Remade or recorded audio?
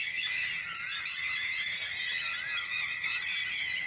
recorded